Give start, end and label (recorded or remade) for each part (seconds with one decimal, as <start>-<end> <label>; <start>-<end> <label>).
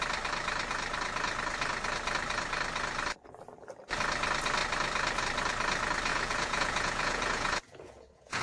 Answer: 0.0-6.1 recorded; 6.1-8.4 remade